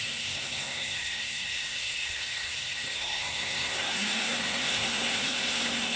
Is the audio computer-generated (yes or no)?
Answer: yes